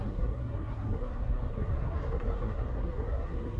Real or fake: fake